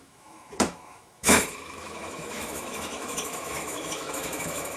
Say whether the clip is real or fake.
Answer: fake